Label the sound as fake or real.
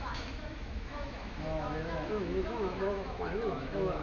fake